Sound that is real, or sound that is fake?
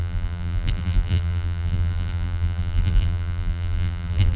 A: fake